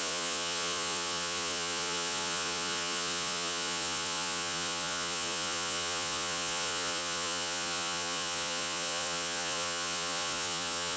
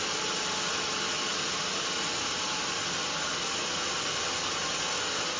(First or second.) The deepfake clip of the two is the first